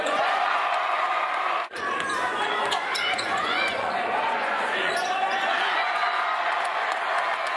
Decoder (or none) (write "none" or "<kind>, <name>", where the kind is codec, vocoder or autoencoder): vocoder, Vocos